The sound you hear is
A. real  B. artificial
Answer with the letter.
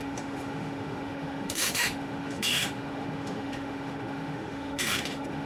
B